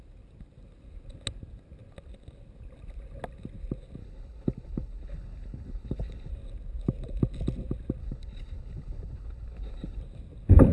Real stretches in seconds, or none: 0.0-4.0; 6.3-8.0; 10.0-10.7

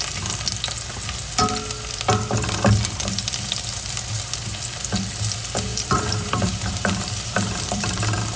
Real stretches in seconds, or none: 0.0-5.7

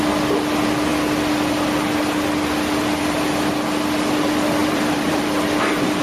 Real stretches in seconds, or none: 0.0-4.6; 5.2-6.0